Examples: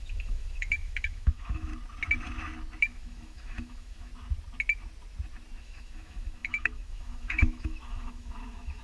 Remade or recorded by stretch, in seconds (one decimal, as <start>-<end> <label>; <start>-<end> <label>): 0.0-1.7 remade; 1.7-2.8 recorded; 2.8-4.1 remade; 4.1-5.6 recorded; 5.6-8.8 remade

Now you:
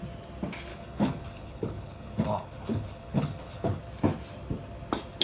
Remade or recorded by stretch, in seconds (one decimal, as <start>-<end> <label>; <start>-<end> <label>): 0.0-0.7 recorded; 0.7-3.8 remade; 3.8-5.2 recorded

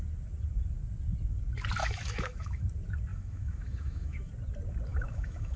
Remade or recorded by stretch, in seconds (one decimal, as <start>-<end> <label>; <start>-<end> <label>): 0.0-1.8 recorded; 1.8-2.6 remade; 2.6-3.1 recorded; 3.1-4.3 remade; 4.3-4.9 recorded; 4.9-5.6 remade

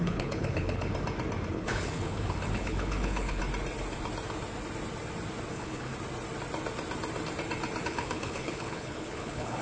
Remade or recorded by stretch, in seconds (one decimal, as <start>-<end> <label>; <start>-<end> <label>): 0.0-0.9 remade; 0.9-1.5 recorded; 1.5-3.4 remade; 3.4-5.5 recorded; 5.5-5.9 remade; 5.9-7.8 recorded; 7.8-9.6 remade

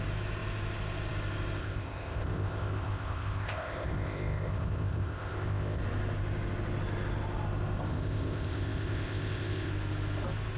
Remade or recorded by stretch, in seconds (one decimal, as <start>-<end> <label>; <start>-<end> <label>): 0.0-1.6 recorded; 1.6-5.8 remade; 5.8-7.9 recorded; 7.9-9.7 remade; 9.7-10.6 recorded

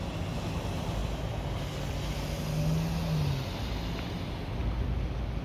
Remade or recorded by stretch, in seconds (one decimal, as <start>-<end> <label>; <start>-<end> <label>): 0.0-5.4 recorded